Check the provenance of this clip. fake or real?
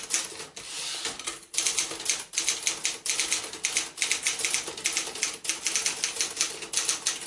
real